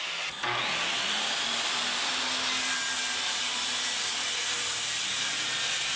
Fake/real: real